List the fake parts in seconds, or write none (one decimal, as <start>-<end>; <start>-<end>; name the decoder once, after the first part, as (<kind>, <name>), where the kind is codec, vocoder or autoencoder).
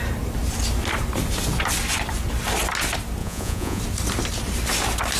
3.2-3.8 (vocoder, Vocos)